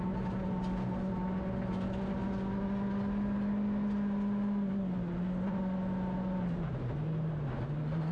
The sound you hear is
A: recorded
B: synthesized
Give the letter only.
A